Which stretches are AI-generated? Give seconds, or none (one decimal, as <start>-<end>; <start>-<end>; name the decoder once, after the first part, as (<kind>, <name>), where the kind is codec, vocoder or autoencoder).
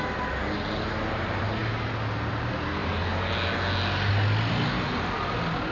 none